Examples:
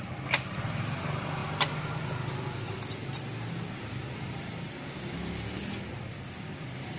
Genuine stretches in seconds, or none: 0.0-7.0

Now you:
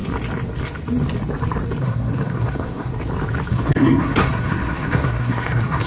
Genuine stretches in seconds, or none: 0.0-1.8; 2.9-3.5

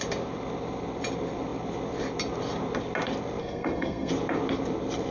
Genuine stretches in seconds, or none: 0.0-3.4; 4.1-5.1

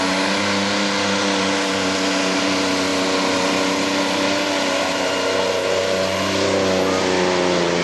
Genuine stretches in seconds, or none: 0.0-7.8